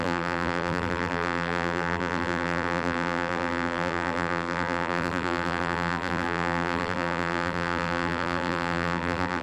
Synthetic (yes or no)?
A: yes